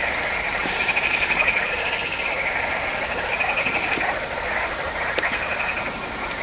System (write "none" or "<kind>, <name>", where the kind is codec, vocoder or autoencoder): none